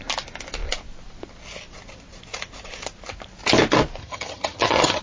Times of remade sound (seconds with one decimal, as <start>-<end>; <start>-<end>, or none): 4.0-5.0